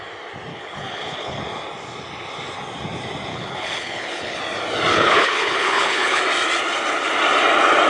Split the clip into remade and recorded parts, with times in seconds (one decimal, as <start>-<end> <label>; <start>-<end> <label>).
0.0-0.5 recorded; 0.5-1.4 remade; 1.4-3.3 recorded; 3.3-4.4 remade; 4.4-4.9 recorded; 4.9-6.2 remade; 6.2-7.9 recorded